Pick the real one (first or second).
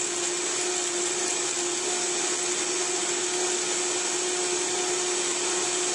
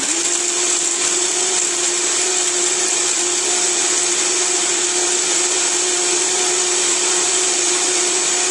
first